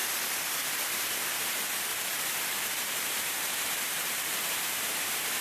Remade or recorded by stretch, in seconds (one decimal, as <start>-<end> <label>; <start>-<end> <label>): 0.0-1.9 recorded; 1.9-4.8 remade; 4.8-5.4 recorded